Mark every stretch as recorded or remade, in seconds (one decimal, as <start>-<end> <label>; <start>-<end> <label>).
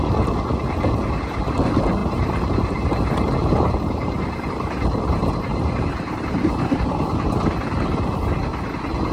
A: 0.0-2.0 recorded; 2.0-4.5 remade; 4.5-5.5 recorded; 5.5-6.9 remade; 6.9-9.1 recorded